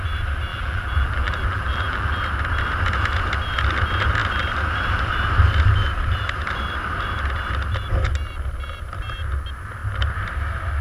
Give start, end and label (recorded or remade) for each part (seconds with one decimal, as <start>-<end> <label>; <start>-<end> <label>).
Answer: 0.0-0.5 recorded; 0.5-2.2 remade; 2.2-10.8 recorded